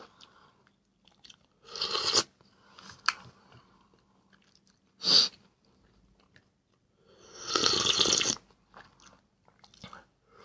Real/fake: real